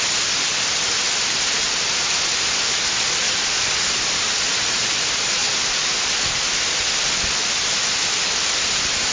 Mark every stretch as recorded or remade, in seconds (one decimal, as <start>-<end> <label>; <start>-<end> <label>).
0.0-9.1 recorded